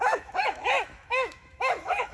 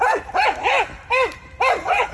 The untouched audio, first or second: second